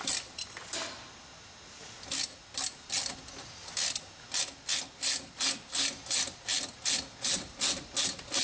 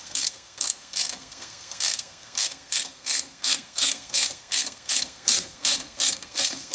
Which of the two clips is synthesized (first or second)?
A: second